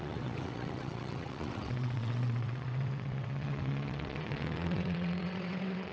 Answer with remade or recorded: remade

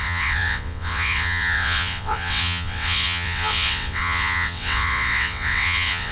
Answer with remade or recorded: remade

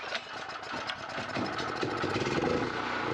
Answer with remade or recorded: recorded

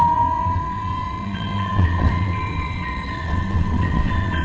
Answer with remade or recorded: remade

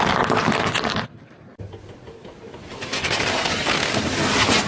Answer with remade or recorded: recorded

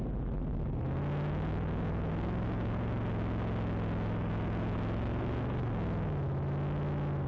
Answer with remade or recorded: recorded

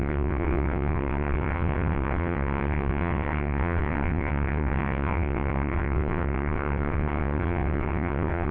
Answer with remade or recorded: remade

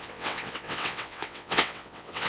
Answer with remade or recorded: remade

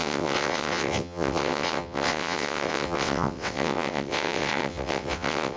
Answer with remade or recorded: remade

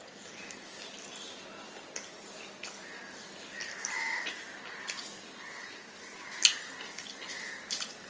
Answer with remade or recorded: recorded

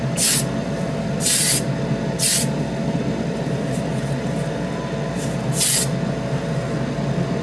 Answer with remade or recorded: recorded